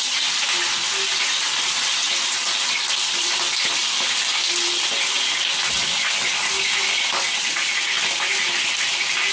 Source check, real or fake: real